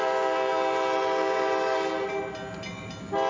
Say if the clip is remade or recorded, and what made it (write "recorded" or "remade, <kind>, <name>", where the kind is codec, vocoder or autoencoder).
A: recorded